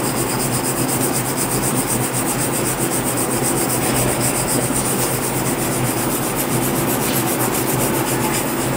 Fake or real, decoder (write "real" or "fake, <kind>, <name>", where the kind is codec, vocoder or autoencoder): real